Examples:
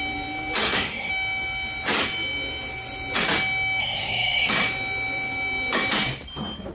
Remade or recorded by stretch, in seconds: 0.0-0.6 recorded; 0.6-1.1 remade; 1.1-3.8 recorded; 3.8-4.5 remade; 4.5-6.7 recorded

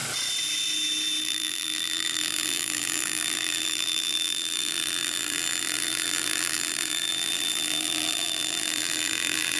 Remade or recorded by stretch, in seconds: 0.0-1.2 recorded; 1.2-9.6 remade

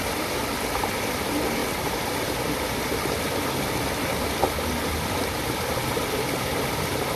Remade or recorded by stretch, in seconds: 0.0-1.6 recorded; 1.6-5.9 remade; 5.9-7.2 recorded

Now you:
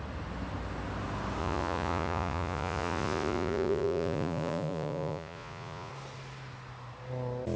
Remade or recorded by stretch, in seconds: 0.0-1.4 recorded; 1.4-5.9 remade; 5.9-7.6 recorded